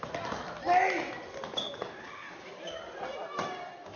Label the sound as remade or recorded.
recorded